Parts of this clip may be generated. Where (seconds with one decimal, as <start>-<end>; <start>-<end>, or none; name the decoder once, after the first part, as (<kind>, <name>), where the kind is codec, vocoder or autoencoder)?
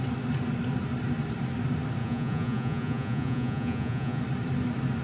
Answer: 2.0-4.2 (vocoder, Vocos)